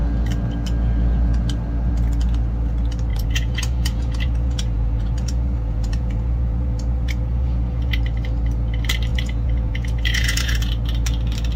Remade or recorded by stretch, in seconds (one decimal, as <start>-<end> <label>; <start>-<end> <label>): 0.0-3.1 recorded; 3.1-7.9 remade; 7.9-9.1 recorded; 9.1-10.7 remade; 10.7-11.6 recorded